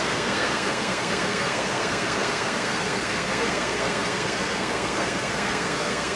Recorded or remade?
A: remade